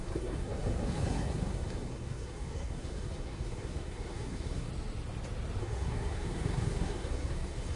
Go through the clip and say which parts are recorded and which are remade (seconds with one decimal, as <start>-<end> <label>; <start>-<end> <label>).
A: 0.0-4.7 remade; 4.7-5.6 recorded; 5.6-7.8 remade